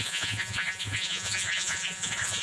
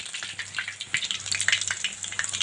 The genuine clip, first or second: second